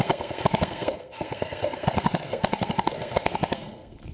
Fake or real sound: fake